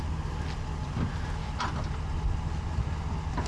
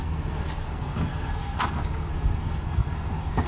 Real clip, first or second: first